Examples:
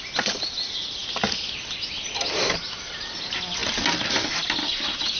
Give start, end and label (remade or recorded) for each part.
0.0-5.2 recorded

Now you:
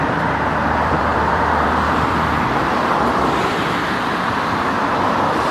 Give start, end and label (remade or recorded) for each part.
0.0-5.5 remade